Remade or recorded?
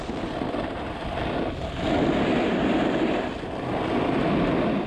recorded